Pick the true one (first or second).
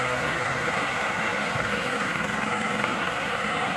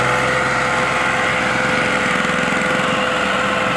second